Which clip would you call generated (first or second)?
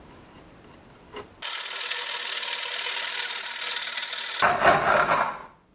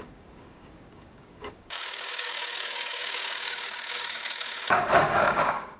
second